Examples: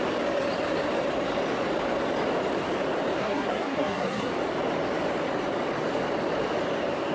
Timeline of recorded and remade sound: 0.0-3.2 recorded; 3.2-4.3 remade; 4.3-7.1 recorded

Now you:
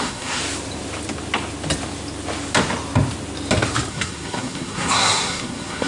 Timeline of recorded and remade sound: 0.0-0.4 remade; 0.4-3.9 recorded; 3.9-5.9 remade

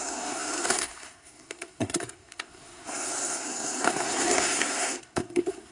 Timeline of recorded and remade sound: 0.0-5.7 remade

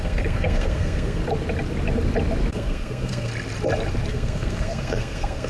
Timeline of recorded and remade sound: 0.0-1.2 remade; 1.2-2.5 recorded; 2.5-3.3 remade; 3.3-4.1 recorded; 4.1-5.5 remade

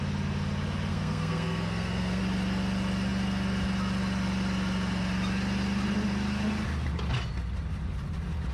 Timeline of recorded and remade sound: 0.0-0.9 recorded; 0.9-2.2 remade; 2.2-8.5 recorded